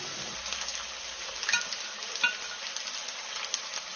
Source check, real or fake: real